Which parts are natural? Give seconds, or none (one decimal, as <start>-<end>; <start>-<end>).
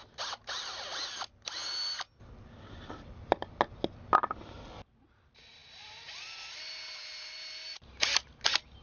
0.0-8.8